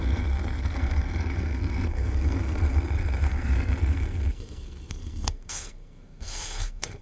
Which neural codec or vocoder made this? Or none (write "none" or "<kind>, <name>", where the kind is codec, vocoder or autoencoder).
codec, SNAC